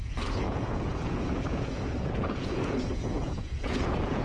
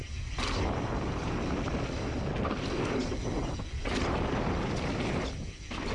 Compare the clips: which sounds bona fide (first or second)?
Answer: second